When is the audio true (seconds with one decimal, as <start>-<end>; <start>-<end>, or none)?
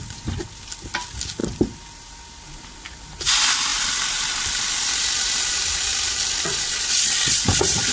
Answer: 0.0-5.9